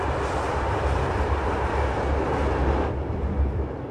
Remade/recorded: recorded